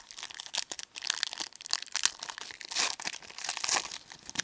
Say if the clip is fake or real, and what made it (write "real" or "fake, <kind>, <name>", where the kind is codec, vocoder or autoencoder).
real